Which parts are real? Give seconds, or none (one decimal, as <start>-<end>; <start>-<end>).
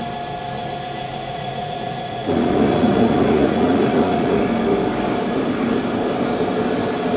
0.0-1.1; 4.4-7.2